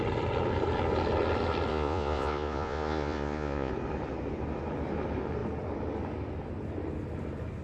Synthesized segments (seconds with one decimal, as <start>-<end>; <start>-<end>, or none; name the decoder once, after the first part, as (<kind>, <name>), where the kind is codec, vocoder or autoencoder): 1.7-3.7 (vocoder, Vocos)